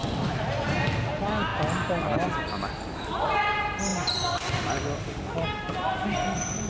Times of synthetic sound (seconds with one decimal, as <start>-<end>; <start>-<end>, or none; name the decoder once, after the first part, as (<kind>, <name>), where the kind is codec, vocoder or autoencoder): none